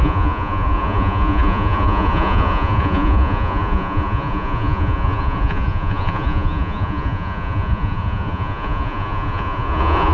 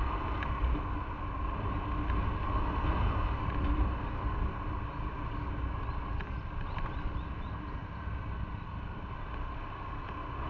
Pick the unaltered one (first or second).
second